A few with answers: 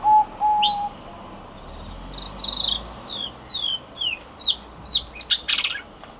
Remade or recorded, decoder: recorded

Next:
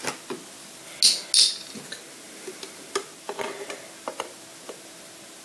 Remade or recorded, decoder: recorded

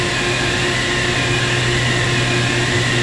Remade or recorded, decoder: recorded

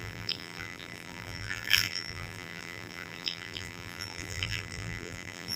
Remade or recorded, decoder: remade, vocoder, BigVGAN v2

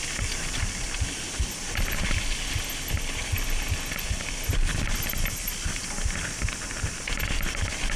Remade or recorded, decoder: recorded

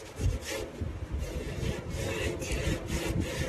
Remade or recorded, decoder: recorded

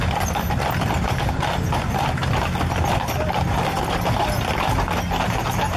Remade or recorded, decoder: recorded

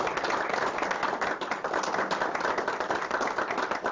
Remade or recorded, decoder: recorded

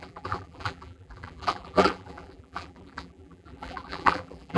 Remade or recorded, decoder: remade, vocoder, BigVGAN v2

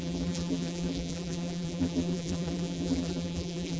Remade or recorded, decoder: remade, vocoder, BigVGAN v2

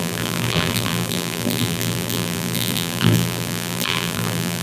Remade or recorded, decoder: remade, vocoder, BigVGAN v2